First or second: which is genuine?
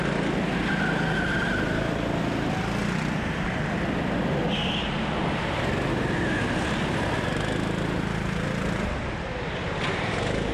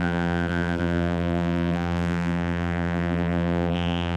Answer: first